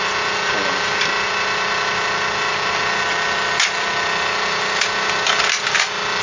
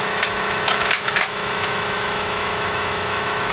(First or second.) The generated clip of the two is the second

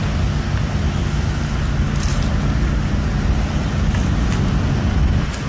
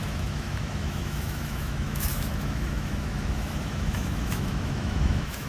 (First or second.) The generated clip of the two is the second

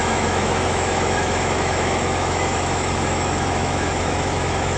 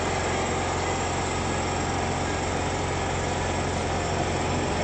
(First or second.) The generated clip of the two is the first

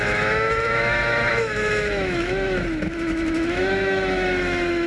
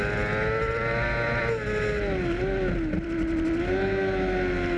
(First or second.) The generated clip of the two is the first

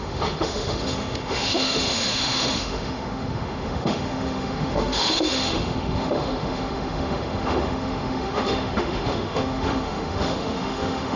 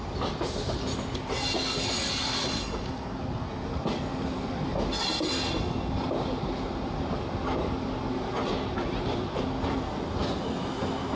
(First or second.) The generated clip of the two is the first